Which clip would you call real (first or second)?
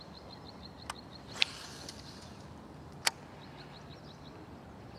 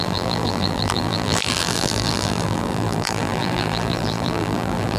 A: first